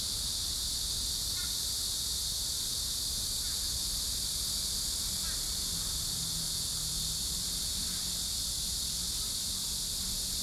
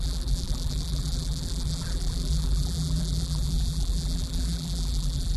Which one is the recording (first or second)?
first